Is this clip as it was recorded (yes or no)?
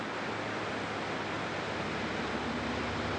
yes